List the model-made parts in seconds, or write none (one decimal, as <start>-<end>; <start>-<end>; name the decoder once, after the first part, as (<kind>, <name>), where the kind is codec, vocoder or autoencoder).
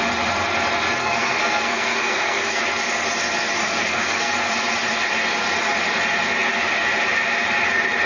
1.0-2.6 (codec, SNAC); 3.6-4.3